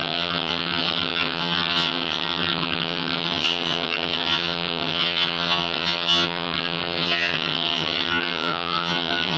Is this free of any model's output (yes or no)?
no